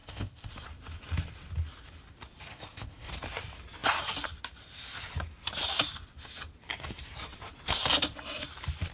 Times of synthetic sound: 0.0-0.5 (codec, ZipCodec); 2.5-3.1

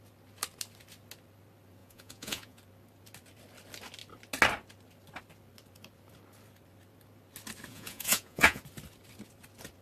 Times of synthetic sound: 1.8-2.6 (vocoder, Vocos); 7.7-8.6

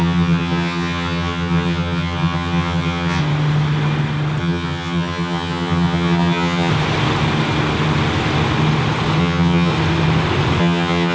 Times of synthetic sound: 0.0-3.2 (vocoder, HiFi-GAN); 4.4-6.7; 9.2-9.7; 10.6-11.1

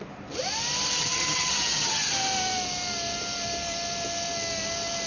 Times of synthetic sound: 1.0-2.1 (vocoder, HiFi-GAN)